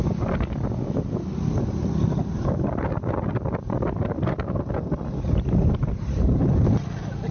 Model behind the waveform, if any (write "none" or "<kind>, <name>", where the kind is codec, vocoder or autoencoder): none